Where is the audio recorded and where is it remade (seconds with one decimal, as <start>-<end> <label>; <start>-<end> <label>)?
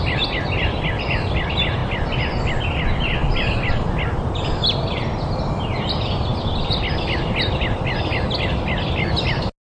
0.0-9.6 recorded